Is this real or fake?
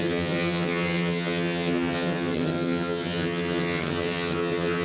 fake